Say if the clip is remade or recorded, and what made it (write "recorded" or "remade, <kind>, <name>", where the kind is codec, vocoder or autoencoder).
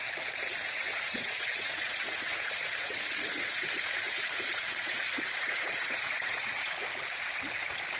remade, vocoder, Vocos